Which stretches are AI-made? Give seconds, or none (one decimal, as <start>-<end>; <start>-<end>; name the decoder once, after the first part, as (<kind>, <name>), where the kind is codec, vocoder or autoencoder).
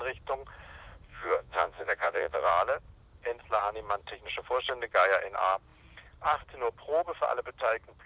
1.1-2.5 (vocoder, Vocos)